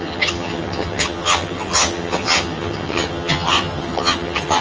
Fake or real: fake